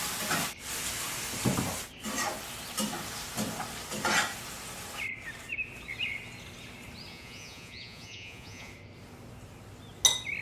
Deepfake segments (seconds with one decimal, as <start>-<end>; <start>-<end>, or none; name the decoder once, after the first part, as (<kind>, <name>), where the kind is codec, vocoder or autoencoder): 7.1-8.7 (vocoder, Vocos)